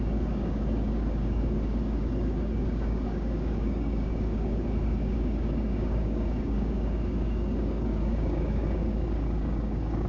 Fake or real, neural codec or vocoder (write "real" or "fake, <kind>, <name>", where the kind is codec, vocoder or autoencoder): fake, codec, DAC